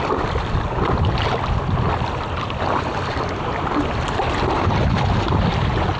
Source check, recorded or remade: recorded